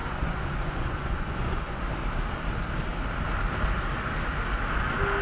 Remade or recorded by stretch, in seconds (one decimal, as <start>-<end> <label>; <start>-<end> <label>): 0.0-1.8 remade; 1.8-5.2 recorded